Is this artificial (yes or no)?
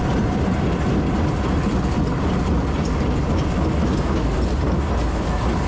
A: no